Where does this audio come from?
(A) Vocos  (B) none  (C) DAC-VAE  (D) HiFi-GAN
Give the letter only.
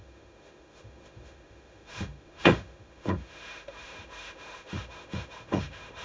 C